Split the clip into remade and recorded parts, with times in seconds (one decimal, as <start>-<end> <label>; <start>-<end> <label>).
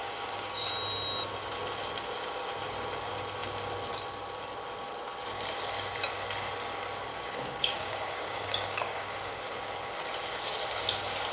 0.0-0.7 remade; 0.7-7.1 recorded; 7.1-9.4 remade; 9.4-11.3 recorded